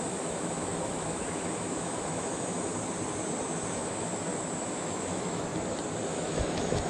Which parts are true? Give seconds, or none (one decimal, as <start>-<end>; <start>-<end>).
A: 2.7-3.7; 4.3-4.8; 5.5-6.1